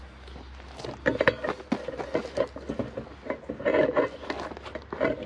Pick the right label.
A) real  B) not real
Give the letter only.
A